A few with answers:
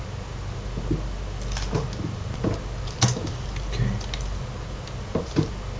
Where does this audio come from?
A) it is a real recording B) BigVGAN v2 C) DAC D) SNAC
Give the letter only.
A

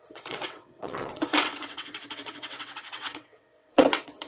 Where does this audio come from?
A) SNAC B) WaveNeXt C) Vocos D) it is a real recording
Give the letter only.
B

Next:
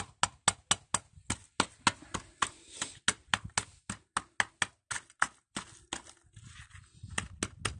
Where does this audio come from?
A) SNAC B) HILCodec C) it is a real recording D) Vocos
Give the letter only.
C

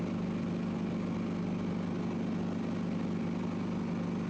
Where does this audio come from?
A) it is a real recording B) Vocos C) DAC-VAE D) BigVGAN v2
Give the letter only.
A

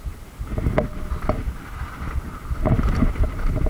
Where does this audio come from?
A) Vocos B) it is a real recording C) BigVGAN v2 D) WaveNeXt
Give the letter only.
B